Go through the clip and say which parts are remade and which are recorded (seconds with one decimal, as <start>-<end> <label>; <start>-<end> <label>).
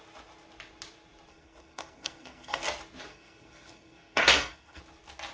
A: 0.0-1.3 recorded; 1.3-2.6 remade; 2.6-3.1 recorded; 3.1-4.8 remade; 4.8-5.3 recorded